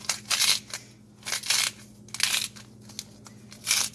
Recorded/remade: recorded